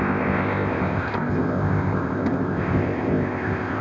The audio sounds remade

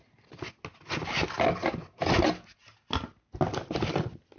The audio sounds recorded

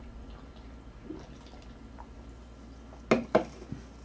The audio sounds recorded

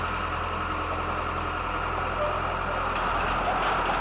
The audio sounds recorded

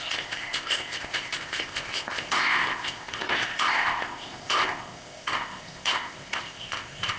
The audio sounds remade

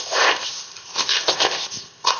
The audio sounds remade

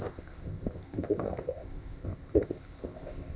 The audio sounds remade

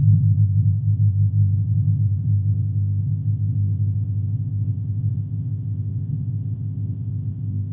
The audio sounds remade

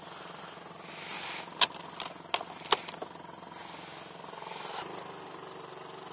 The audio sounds recorded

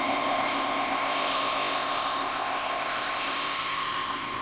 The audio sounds remade